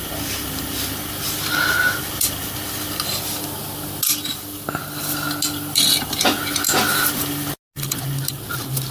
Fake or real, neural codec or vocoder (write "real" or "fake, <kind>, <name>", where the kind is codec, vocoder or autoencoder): real